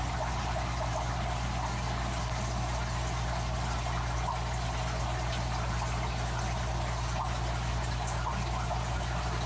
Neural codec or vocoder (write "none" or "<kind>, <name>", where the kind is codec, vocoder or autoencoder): none